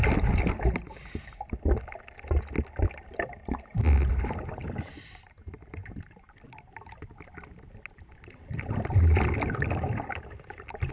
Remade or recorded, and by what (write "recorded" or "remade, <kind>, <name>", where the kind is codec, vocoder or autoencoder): recorded